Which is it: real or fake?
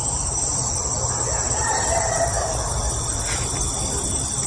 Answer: real